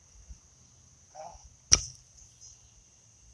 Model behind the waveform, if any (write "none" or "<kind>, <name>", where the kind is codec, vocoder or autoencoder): none